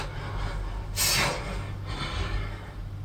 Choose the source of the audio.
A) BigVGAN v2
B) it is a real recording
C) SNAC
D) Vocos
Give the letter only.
B